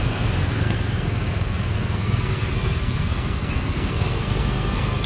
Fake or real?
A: fake